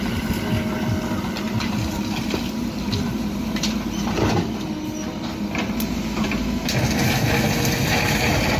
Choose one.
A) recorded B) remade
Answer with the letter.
A